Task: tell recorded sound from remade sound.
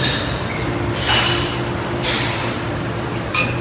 recorded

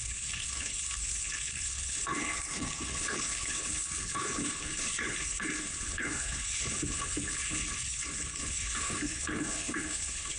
remade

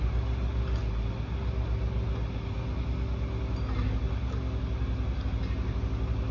recorded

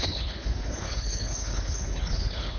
remade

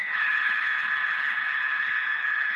remade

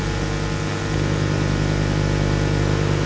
recorded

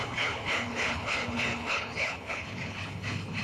remade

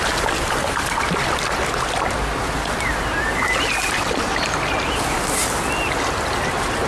recorded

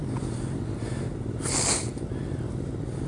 recorded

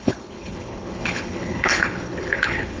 remade